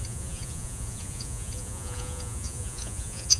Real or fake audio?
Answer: fake